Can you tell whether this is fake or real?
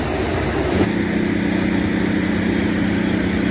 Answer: real